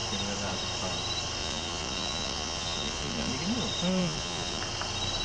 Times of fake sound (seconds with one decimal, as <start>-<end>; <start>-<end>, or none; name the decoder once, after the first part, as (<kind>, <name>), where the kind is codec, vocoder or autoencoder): 1.4-3.3 (vocoder, Vocos); 4.0-4.6